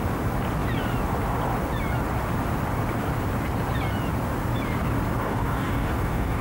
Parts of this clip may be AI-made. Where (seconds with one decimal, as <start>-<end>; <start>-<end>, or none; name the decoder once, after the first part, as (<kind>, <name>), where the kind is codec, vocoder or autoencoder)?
5.2-6.4 (codec, DAC)